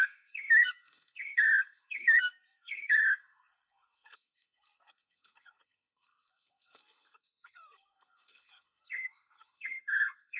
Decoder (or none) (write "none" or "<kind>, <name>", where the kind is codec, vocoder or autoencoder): codec, SNAC